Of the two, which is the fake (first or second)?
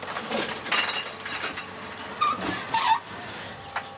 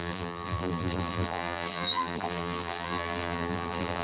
second